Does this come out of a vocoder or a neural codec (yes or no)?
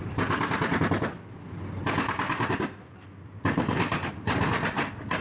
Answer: no